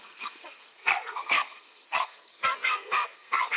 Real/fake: fake